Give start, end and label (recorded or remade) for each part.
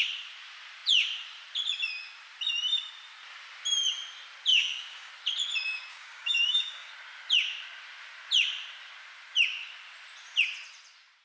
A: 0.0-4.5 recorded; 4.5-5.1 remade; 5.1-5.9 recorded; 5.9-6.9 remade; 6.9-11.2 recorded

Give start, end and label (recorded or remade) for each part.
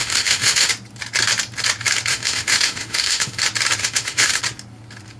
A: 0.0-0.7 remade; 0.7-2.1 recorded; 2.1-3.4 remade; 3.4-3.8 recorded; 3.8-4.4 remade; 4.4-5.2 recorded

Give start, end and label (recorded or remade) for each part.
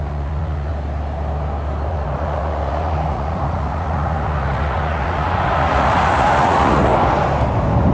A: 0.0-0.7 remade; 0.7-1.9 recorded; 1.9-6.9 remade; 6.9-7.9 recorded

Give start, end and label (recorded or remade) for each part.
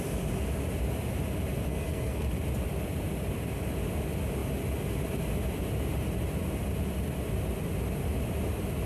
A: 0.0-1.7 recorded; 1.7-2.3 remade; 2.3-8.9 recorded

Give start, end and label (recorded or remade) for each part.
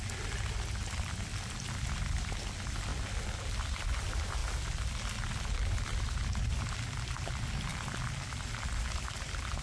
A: 0.0-9.6 recorded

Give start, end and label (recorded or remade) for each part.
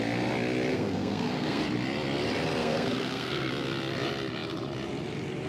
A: 0.0-0.7 recorded; 0.7-1.6 remade; 1.6-2.6 recorded; 2.6-3.5 remade; 3.5-5.5 recorded